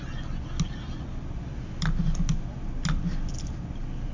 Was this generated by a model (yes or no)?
no